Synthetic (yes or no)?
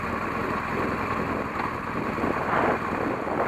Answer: no